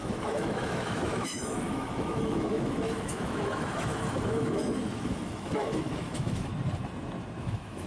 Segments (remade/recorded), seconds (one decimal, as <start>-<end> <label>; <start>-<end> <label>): 0.0-6.5 remade; 6.5-7.4 recorded; 7.4-7.9 remade